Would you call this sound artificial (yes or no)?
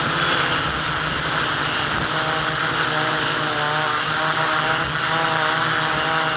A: no